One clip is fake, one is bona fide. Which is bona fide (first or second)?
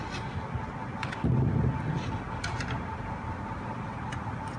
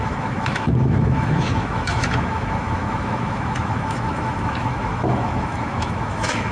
first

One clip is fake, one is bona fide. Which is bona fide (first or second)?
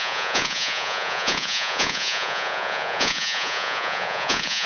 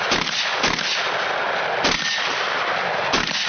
second